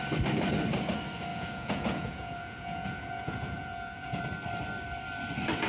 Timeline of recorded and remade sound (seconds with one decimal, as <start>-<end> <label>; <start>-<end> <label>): 0.0-1.3 recorded; 1.3-4.2 remade; 4.2-5.7 recorded